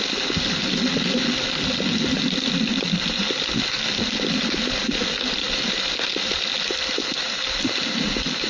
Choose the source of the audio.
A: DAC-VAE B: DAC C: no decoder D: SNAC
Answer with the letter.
C